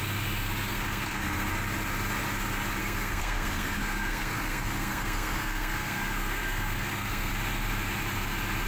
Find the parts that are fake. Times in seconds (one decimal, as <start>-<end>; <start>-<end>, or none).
0.7-1.5; 2.8-7.3